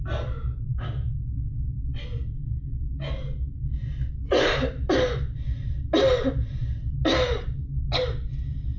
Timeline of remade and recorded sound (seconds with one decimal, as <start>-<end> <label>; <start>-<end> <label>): 0.0-0.7 recorded; 0.7-1.2 remade; 1.2-8.8 recorded